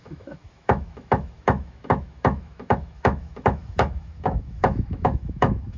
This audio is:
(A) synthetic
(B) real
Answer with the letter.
A